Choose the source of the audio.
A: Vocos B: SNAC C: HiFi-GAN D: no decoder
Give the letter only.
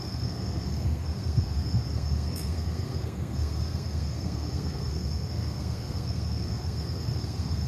B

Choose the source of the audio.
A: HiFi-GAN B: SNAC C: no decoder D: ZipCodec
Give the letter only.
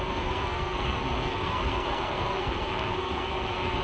B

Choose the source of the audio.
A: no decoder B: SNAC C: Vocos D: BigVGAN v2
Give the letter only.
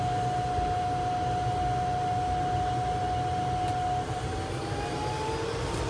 A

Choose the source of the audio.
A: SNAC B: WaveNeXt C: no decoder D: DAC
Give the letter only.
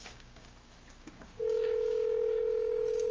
D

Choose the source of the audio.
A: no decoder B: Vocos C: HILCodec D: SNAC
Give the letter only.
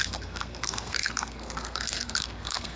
D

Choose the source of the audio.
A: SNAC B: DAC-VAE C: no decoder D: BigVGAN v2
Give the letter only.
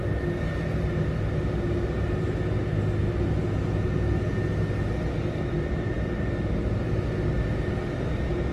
C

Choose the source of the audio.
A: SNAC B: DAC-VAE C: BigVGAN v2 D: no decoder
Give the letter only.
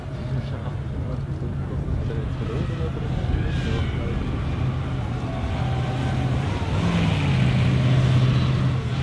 D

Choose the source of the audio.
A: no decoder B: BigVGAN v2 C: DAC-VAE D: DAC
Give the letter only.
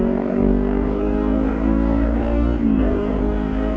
D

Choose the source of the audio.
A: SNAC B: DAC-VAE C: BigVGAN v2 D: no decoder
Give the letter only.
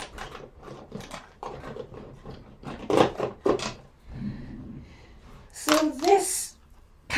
C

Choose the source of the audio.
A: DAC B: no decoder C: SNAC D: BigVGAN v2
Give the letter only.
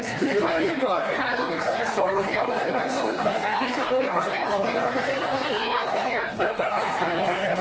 C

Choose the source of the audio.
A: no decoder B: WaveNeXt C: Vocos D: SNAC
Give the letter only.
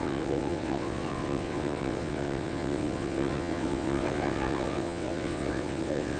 B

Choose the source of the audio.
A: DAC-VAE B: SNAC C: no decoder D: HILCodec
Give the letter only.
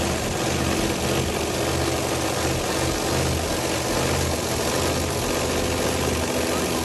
C